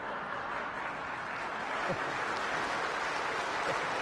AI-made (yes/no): no